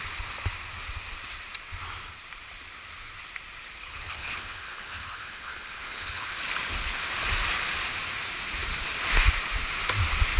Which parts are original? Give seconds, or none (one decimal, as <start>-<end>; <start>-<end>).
0.0-3.6; 6.4-10.4